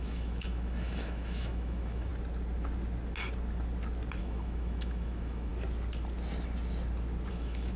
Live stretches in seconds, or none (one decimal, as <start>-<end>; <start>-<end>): 2.1-4.2; 5.5-7.3